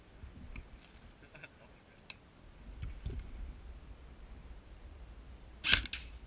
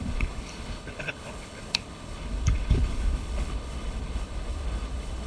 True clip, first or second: first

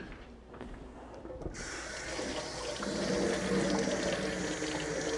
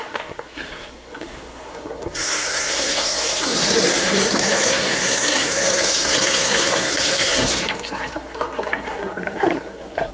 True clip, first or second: first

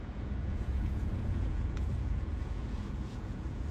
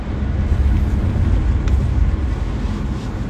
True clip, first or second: second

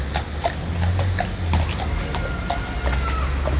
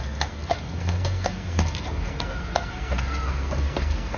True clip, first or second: first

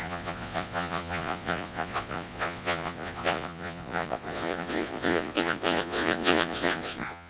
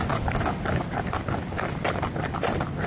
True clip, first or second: second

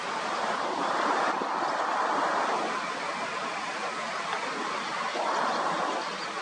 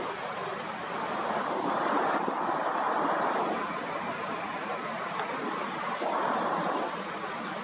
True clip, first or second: first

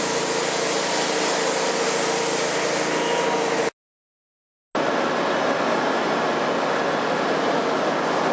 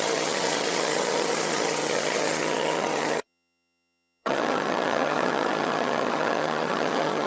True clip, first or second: first